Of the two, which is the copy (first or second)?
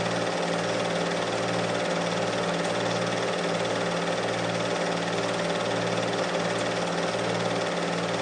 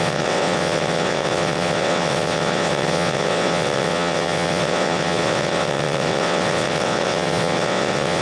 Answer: second